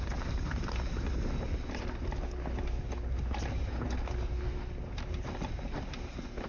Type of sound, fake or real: real